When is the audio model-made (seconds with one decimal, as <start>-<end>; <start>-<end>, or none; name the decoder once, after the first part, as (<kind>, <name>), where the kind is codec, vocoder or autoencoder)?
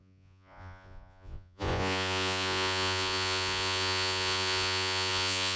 0.0-5.6 (vocoder, Vocos)